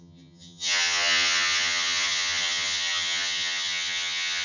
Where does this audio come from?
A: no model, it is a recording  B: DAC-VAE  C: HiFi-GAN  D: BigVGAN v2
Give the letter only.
C